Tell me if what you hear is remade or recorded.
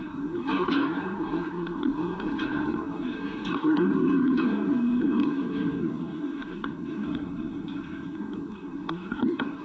remade